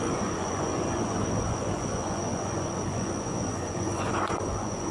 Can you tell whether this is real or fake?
fake